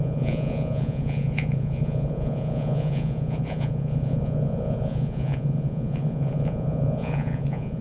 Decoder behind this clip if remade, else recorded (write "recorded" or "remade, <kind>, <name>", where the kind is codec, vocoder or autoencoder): remade, vocoder, Vocos